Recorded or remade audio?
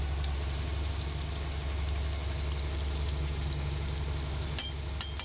recorded